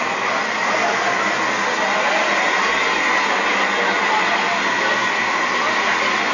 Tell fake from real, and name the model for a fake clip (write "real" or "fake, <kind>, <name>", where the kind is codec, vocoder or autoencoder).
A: real